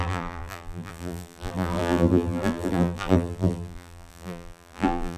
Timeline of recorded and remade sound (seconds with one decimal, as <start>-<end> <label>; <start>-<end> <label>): 0.0-5.2 remade